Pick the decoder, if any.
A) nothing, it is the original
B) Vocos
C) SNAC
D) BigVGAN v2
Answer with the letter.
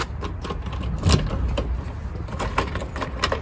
A